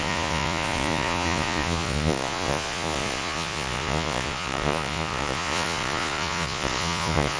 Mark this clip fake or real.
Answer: fake